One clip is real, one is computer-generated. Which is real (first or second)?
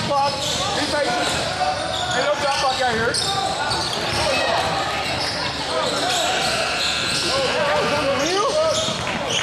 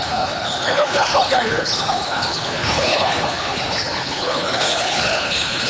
first